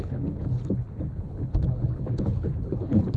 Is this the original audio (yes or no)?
no